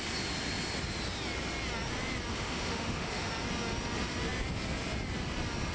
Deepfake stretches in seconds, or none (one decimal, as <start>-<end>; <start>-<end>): 2.3-3.3

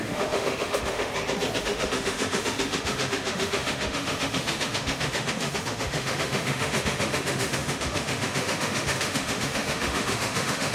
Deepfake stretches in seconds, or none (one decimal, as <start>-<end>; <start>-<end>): 0.0-1.1; 1.6-10.7

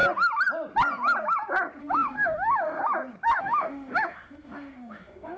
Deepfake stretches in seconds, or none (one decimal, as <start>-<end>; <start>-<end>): 1.8-2.8; 3.4-5.4

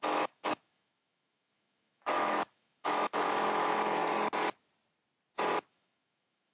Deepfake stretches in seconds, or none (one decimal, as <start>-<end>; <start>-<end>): 0.0-4.0; 5.7-6.5

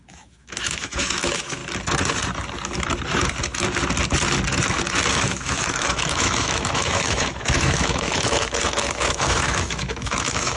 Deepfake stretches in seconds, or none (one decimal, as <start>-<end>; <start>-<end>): 0.0-1.6; 5.1-10.6

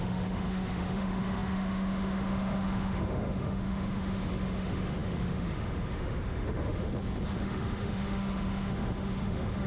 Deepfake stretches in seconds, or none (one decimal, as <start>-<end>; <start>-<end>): 0.0-6.9; 7.4-9.7

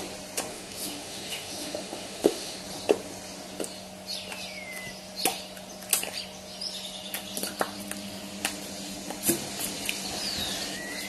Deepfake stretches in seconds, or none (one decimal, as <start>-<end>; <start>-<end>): 0.5-2.6